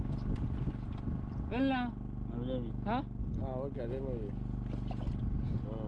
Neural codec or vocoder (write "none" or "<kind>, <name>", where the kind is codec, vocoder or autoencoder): none